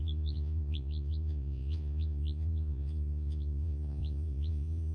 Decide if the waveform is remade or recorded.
remade